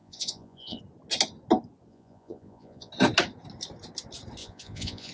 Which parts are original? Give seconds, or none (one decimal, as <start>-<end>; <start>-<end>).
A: 0.8-1.9; 2.9-4.4